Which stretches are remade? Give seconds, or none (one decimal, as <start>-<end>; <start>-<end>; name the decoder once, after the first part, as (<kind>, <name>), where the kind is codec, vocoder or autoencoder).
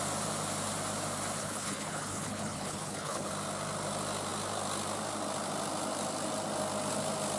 1.4-3.3 (codec, HILCodec)